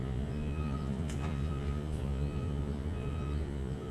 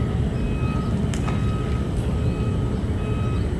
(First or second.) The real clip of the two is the second